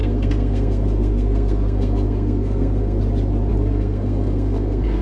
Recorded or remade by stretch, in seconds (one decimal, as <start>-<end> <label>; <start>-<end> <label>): 0.0-3.0 remade; 3.0-3.5 recorded; 3.5-5.0 remade